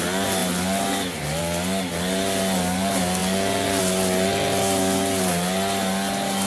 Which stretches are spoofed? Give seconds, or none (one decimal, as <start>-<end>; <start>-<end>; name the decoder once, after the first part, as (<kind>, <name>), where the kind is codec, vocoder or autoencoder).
none